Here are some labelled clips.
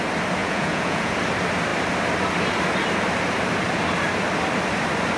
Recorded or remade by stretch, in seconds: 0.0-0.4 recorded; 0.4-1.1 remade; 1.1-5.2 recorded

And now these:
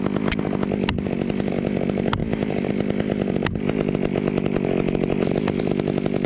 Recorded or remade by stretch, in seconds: 0.0-2.2 recorded; 2.2-2.7 remade; 2.7-4.1 recorded; 4.1-5.6 remade; 5.6-6.3 recorded

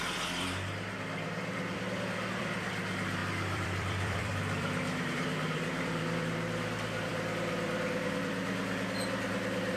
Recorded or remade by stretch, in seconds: 0.0-9.8 remade

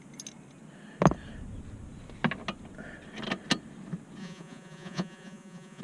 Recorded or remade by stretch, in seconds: 0.0-4.2 recorded; 4.2-5.8 remade

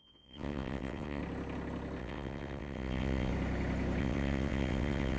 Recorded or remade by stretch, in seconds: 0.0-1.2 remade; 1.2-2.0 recorded; 2.0-3.3 remade; 3.3-4.0 recorded; 4.0-5.2 remade

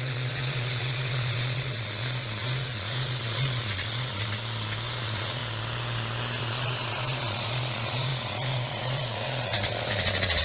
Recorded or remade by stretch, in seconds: 0.0-4.4 remade; 4.4-5.0 recorded; 5.0-5.4 remade; 5.4-6.4 recorded; 6.4-10.4 remade

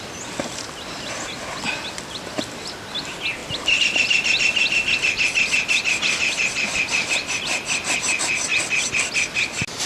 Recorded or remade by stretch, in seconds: 0.0-9.9 recorded